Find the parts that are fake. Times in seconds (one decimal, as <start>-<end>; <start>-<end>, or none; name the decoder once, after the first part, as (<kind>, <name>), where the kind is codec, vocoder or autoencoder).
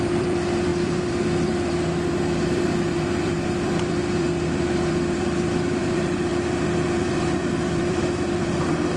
0.0-9.0 (vocoder, BigVGAN v2)